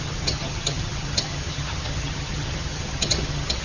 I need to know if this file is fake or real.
fake